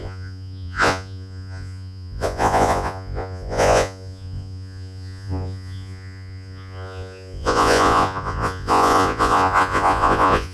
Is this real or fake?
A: fake